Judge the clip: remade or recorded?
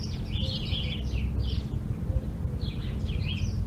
recorded